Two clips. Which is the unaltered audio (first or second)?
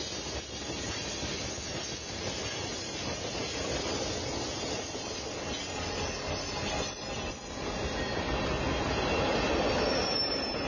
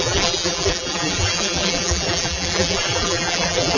first